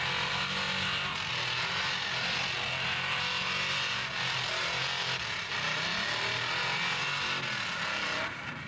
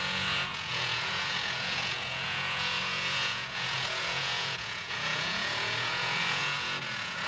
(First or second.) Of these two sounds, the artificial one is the second